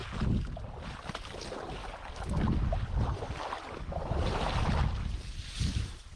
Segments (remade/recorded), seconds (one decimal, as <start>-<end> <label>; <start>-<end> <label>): 0.0-6.2 recorded